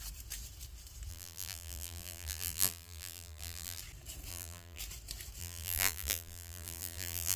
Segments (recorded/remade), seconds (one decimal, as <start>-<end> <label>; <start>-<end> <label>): 0.0-1.1 recorded; 1.1-3.8 remade; 3.8-4.3 recorded; 4.3-4.8 remade; 4.8-5.4 recorded; 5.4-7.4 remade